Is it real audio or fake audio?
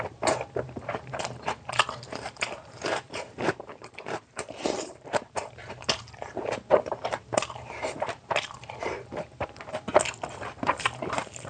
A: fake